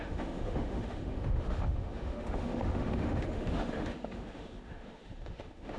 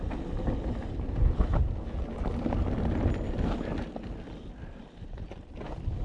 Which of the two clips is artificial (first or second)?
first